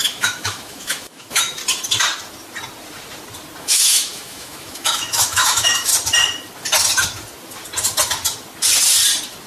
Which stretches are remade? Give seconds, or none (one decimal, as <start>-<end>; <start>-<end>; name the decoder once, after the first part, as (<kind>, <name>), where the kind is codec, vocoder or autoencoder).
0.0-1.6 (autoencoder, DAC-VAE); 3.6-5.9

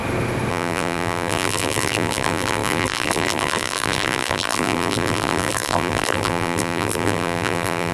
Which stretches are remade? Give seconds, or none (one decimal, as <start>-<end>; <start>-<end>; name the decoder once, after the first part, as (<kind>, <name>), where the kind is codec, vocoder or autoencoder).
0.5-7.9 (vocoder, BigVGAN v2)

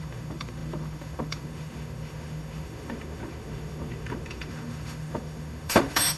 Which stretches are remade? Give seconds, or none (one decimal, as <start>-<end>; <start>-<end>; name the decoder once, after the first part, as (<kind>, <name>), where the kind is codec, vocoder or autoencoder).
0.0-6.2 (autoencoder, DAC-VAE)